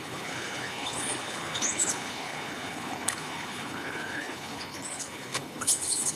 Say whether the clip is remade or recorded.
remade